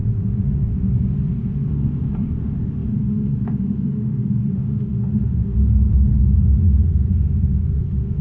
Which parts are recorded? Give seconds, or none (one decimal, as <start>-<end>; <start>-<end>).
0.0-1.7